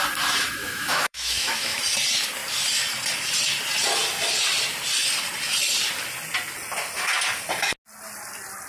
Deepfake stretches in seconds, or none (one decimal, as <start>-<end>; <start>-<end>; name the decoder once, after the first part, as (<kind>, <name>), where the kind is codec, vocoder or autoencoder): 0.6-1.8 (autoencoder, DAC-VAE)